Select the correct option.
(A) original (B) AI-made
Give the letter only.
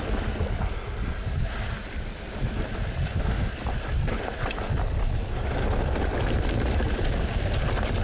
A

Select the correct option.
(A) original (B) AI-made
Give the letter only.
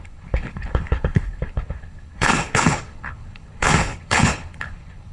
B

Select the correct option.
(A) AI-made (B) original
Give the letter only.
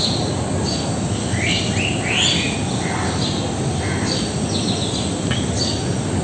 B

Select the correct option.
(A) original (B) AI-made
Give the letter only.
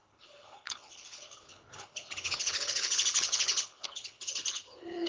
B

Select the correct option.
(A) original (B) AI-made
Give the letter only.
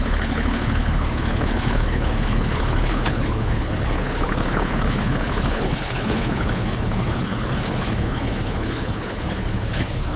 B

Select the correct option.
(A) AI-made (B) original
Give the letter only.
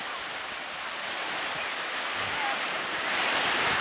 B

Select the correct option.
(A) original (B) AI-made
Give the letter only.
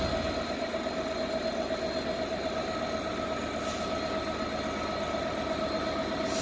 A